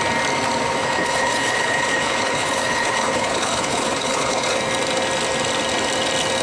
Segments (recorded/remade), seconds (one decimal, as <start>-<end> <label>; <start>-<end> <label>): 0.0-0.8 recorded; 0.8-4.6 remade; 4.6-6.4 recorded